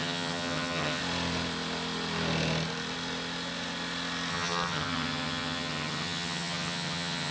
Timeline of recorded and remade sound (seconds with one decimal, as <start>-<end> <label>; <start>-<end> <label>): 0.0-1.0 remade; 1.0-4.3 recorded; 4.3-7.3 remade